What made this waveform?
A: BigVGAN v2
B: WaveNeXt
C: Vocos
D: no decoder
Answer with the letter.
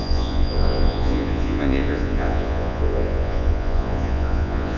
C